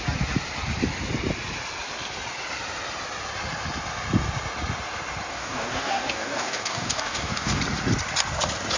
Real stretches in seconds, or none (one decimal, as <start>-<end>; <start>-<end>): 0.0-5.3; 7.6-8.8